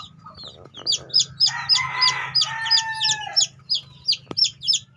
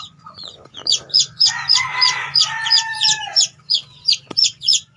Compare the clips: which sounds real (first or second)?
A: first